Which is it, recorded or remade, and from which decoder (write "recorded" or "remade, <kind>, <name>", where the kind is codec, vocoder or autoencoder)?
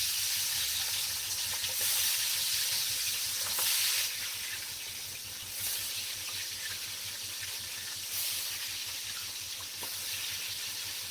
recorded